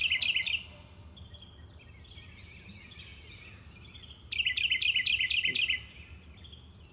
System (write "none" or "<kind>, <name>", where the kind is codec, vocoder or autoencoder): none